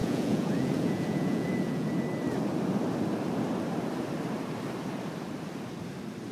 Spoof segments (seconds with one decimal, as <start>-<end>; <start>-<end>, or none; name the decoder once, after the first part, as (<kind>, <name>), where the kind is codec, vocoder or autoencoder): 0.0-1.9 (vocoder, Vocos)